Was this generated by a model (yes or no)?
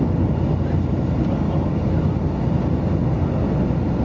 no